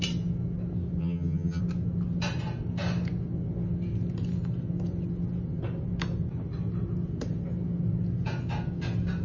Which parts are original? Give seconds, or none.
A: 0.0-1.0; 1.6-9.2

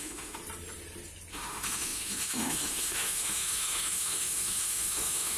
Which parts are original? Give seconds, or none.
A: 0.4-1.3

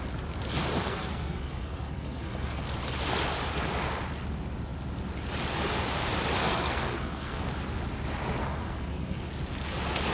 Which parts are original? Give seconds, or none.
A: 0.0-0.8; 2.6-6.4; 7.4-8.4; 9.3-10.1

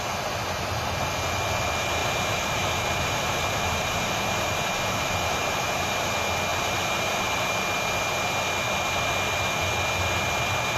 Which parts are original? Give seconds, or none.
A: 0.0-2.0; 6.1-6.5; 7.5-10.8

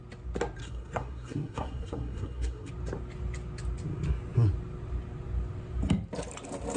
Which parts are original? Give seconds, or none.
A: 0.0-0.6; 2.7-6.8

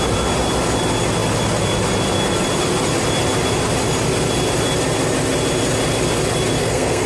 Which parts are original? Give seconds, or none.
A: 0.0-6.6

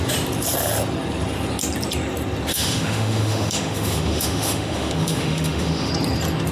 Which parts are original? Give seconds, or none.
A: 0.0-2.5; 5.9-6.5

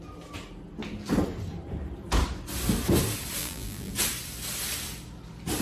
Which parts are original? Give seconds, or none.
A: 0.0-3.4; 3.9-5.6